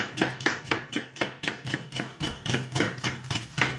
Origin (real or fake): fake